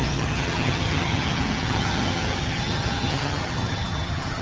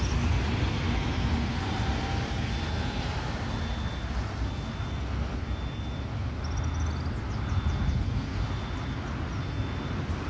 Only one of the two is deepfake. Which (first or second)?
first